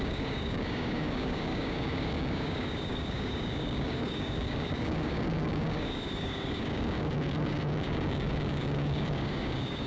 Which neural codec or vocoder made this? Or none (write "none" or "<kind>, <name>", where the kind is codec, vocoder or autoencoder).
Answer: codec, DAC